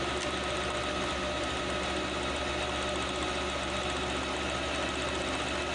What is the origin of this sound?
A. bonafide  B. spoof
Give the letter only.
A